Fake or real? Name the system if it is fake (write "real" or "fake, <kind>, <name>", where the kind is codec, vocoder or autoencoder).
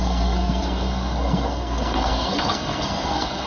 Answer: fake, codec, SNAC